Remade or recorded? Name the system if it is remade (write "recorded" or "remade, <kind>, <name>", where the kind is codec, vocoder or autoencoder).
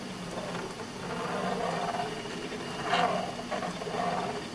recorded